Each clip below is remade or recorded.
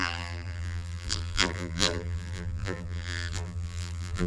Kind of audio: remade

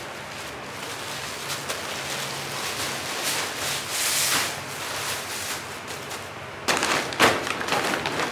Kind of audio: recorded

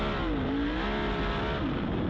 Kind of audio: recorded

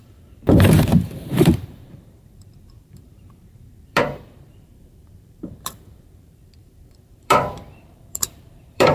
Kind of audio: remade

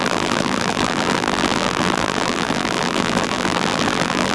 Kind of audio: remade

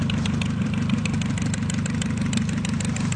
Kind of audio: remade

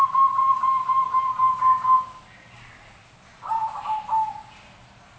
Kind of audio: recorded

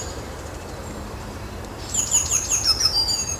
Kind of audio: remade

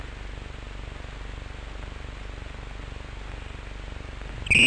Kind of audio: recorded